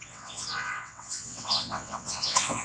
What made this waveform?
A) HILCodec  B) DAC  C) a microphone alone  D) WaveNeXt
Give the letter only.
D